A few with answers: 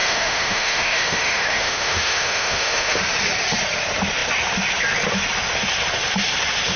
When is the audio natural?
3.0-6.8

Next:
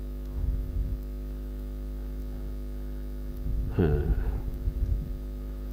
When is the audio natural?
2.2-3.3

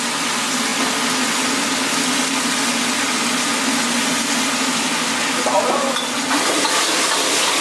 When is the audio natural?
0.0-7.6

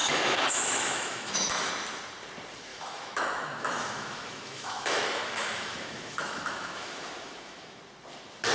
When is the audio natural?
1.7-2.7; 7.8-8.5